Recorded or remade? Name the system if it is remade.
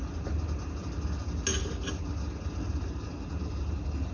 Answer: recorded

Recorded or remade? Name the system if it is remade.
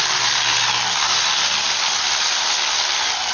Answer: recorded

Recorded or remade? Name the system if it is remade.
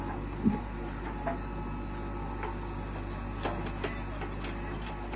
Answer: recorded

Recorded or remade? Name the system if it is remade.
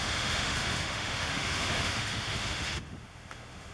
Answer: remade, autoencoder, DAC-VAE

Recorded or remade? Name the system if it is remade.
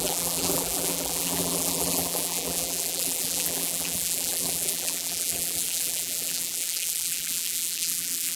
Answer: remade, vocoder, BigVGAN v2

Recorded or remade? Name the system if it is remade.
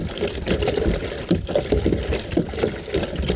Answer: recorded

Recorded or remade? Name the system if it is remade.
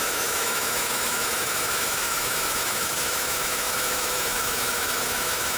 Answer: remade, autoencoder, DAC-VAE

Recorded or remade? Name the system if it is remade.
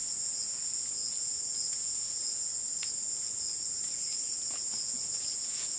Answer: remade, vocoder, Vocos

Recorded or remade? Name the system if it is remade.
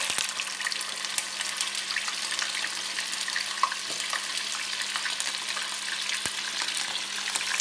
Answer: recorded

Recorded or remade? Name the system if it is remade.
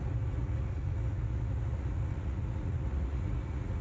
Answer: remade, vocoder, Vocos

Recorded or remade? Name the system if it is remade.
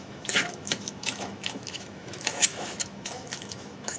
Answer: remade, autoencoder, DAC-VAE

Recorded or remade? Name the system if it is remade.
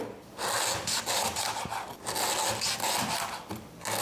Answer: recorded